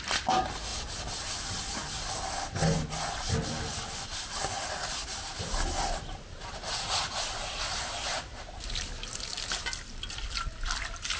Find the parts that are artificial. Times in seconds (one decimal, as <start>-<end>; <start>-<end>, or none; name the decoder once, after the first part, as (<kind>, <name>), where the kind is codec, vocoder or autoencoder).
none